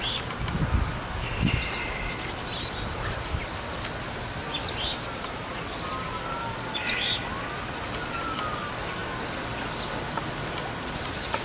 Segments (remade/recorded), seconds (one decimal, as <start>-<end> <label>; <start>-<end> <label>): 0.0-11.4 recorded